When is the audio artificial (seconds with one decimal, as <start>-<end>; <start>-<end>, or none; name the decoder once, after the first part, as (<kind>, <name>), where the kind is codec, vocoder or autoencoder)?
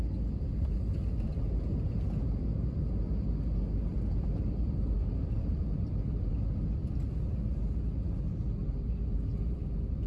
3.9-6.3 (vocoder, BigVGAN v2); 6.8-7.4; 9.3-10.1